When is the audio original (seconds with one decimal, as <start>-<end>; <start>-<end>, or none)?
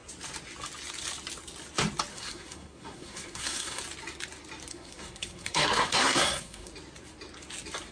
0.0-2.1; 3.8-4.7; 6.7-7.9